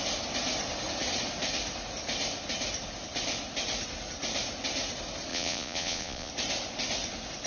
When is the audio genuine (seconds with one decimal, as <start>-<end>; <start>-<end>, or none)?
0.0-5.3; 6.3-7.5